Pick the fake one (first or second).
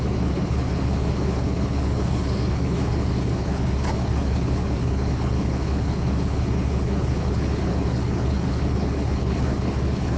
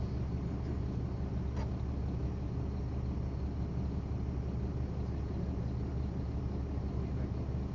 first